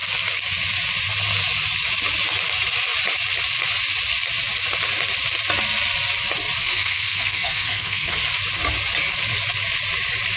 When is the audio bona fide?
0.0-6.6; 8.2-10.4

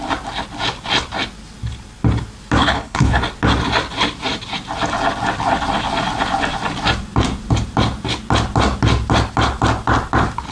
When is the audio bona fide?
0.0-2.6; 3.2-10.5